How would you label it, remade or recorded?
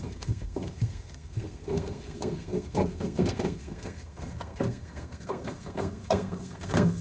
remade